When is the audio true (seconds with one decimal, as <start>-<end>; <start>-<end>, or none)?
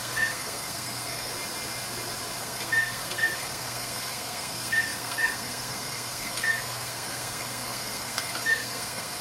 1.3-2.4